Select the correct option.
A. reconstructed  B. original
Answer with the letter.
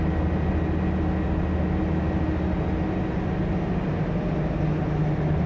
B